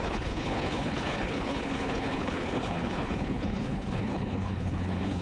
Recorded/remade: remade